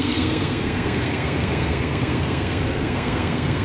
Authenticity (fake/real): fake